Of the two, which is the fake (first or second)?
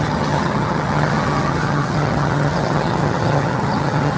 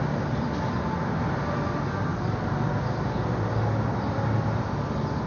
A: first